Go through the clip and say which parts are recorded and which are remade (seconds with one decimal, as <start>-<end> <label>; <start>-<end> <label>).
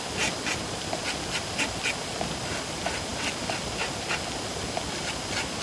0.0-5.6 recorded